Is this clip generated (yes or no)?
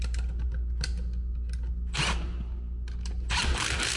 no